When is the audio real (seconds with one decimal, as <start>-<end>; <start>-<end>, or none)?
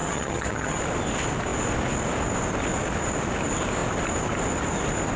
0.8-5.2